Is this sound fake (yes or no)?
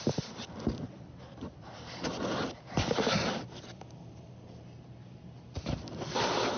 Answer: yes